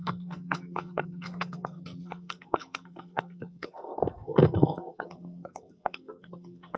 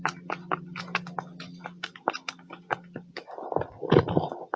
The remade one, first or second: first